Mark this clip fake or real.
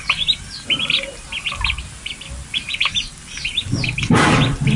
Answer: real